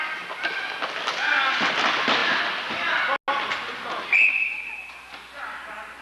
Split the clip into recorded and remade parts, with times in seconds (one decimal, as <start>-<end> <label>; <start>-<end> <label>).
0.0-6.0 recorded